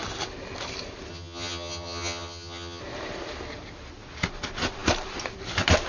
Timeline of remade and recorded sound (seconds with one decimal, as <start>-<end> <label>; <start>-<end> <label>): 0.0-1.1 recorded; 1.1-2.8 remade; 2.8-5.9 recorded